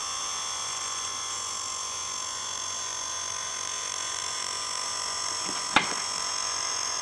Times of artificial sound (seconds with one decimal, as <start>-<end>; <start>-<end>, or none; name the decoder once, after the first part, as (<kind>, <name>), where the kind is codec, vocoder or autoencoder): 0.0-7.0 (vocoder, Vocos)